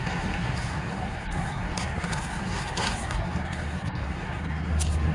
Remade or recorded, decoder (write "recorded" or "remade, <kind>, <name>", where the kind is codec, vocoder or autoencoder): remade, codec, SNAC